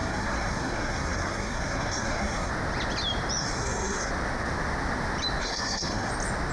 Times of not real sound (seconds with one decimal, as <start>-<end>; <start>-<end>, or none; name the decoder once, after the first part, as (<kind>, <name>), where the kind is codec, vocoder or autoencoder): 0.0-2.5 (codec, SNAC); 3.4-4.1; 5.4-6.1